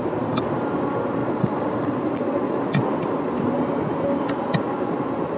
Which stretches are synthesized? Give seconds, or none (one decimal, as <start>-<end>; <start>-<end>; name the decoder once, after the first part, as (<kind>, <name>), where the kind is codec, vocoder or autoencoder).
1.2-2.6 (vocoder, Vocos)